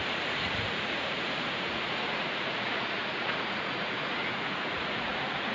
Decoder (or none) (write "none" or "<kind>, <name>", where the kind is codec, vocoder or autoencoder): vocoder, Vocos